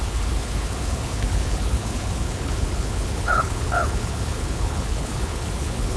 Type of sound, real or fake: fake